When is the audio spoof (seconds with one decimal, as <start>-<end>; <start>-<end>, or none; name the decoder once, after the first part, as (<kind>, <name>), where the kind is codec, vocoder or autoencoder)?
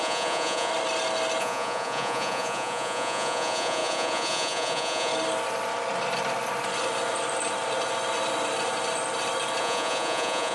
0.0-0.7 (vocoder, Vocos); 1.4-5.1; 9.6-10.5